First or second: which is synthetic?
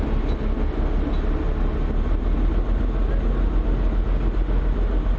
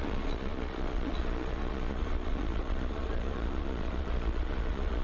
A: second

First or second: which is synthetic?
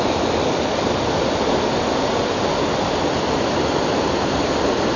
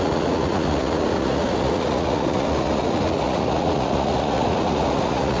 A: second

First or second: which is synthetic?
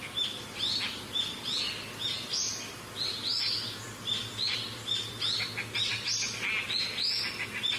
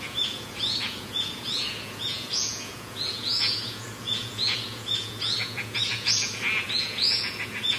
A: second